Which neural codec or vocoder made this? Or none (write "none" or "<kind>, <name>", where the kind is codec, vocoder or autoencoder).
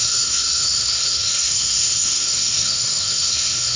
codec, SNAC